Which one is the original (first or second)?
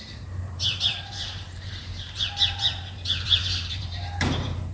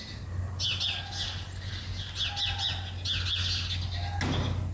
second